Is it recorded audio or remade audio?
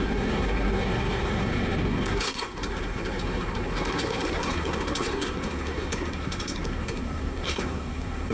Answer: remade